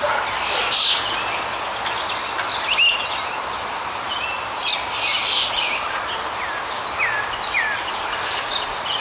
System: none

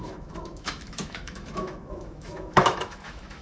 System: autoencoder, DAC-VAE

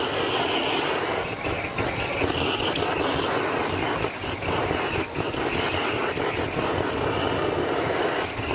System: none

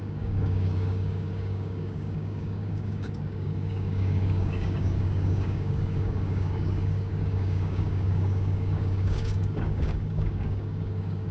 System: codec, DAC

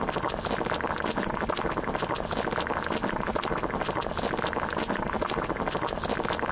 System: none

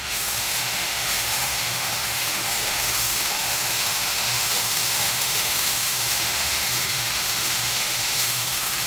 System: autoencoder, DAC-VAE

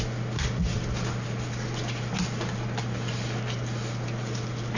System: none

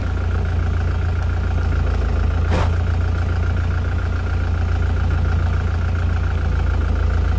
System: none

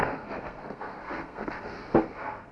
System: codec, SNAC